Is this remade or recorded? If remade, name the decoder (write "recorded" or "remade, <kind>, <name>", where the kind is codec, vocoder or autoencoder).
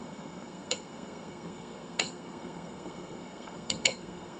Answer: remade, codec, SNAC